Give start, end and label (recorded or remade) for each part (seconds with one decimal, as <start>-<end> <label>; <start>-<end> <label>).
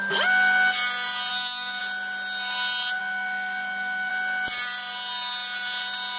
0.0-1.3 recorded; 1.3-1.8 remade; 1.8-3.0 recorded; 3.0-4.1 remade; 4.1-6.2 recorded